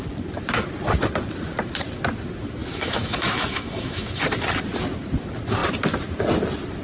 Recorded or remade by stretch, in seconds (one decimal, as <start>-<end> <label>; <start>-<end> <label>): 0.0-2.6 recorded; 2.6-4.2 remade; 4.2-6.8 recorded

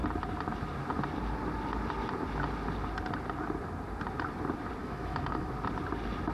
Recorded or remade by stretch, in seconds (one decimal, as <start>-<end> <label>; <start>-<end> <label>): 0.0-4.8 recorded; 4.8-5.5 remade; 5.5-6.3 recorded

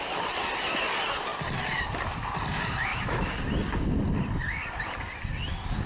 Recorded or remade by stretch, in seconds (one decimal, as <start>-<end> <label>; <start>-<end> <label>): 0.0-2.9 recorded; 2.9-3.4 remade; 3.4-5.9 recorded

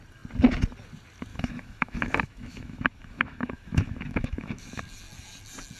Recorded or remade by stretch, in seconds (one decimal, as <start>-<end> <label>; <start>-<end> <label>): 0.0-1.3 recorded; 1.3-4.8 remade; 4.8-5.8 recorded

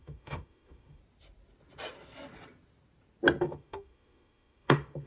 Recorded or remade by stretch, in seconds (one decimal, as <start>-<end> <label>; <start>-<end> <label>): 0.0-1.0 remade; 1.0-3.4 recorded; 3.4-5.1 remade